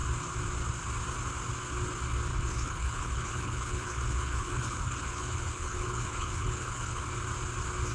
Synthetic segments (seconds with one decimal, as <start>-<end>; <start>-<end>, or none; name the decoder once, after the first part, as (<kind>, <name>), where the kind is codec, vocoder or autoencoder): 2.3-7.0 (codec, HILCodec)